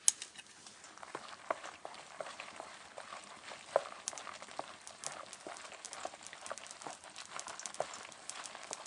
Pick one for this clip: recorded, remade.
recorded